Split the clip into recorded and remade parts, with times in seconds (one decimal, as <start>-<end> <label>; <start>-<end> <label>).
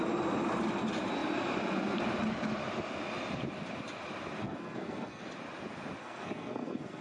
0.0-4.4 recorded; 4.4-5.2 remade; 5.2-6.0 recorded; 6.0-7.0 remade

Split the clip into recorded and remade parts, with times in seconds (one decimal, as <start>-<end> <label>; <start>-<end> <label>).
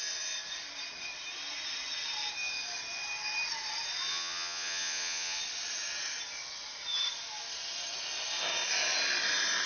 0.0-4.1 recorded; 4.1-5.4 remade; 5.4-9.7 recorded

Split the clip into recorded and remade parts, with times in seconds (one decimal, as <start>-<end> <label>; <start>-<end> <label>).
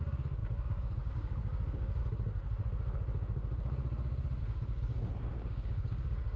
0.0-2.0 remade; 2.0-4.4 recorded; 4.4-6.4 remade